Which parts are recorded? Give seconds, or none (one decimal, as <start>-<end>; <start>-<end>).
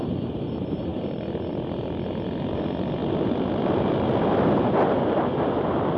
0.0-6.0